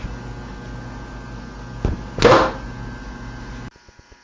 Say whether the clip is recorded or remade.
recorded